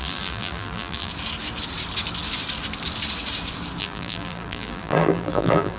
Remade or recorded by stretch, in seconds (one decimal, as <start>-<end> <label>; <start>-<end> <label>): 0.0-1.1 remade; 1.1-3.8 recorded; 3.8-5.8 remade